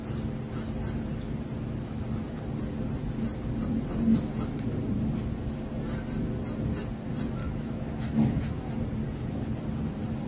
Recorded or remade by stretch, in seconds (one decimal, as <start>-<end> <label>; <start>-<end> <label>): 0.0-7.4 recorded; 7.4-8.7 remade; 8.7-10.3 recorded